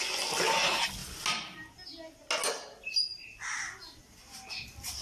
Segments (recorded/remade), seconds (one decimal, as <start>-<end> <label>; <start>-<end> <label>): 0.0-5.0 recorded